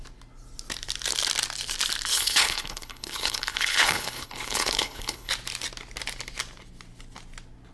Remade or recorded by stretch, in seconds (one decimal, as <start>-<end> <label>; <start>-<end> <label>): 0.0-2.1 recorded; 2.1-5.3 remade; 5.3-7.7 recorded